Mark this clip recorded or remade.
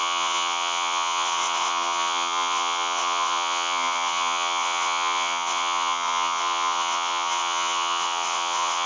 remade